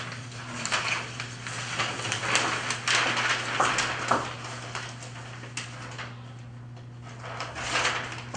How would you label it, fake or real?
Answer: real